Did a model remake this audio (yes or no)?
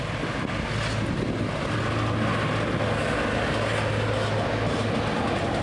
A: no